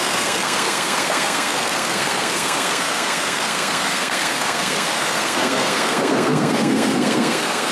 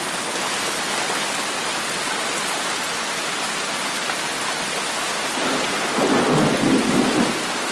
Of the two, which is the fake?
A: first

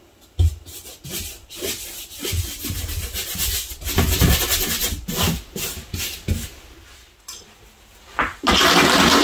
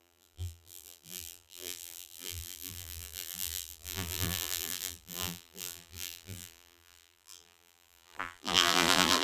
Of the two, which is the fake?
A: second